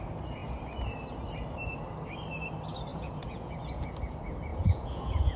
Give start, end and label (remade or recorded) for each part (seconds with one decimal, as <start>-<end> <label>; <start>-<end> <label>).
0.0-2.9 recorded; 2.9-3.6 remade; 3.6-4.5 recorded; 4.5-5.4 remade